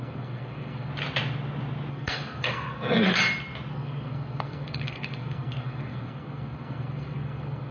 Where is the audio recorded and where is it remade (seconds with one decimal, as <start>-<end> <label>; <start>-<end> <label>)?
0.0-0.9 remade; 0.9-1.9 recorded; 1.9-3.2 remade; 3.2-3.7 recorded; 3.7-7.7 remade